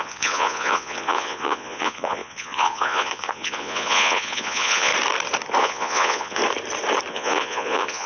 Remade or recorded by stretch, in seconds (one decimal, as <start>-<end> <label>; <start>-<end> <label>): 0.0-4.9 remade; 4.9-5.6 recorded; 5.6-6.4 remade; 6.4-7.1 recorded; 7.1-8.1 remade